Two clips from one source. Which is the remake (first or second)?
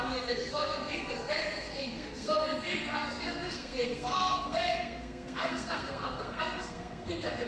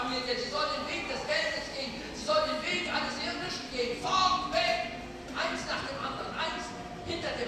first